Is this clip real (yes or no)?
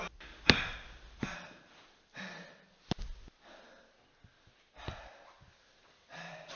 yes